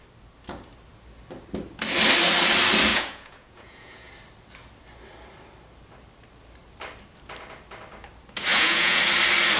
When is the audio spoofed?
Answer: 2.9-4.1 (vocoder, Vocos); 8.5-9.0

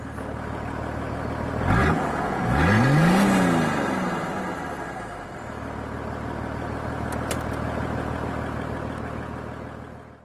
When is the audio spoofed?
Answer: 1.8-2.8 (vocoder, Vocos)

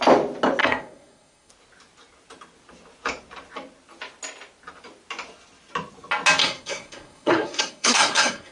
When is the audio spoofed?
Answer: 0.6-1.5 (codec, SNAC); 6.4-8.5

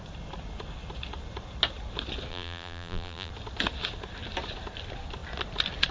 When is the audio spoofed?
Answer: 2.3-3.3 (vocoder, BigVGAN v2)

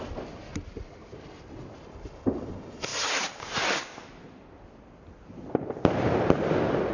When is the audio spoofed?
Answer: 0.0-0.5 (vocoder, BigVGAN v2); 2.5-2.9; 6.5-6.9

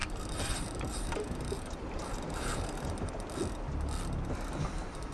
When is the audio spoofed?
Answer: 0.0-3.1 (vocoder, BigVGAN v2)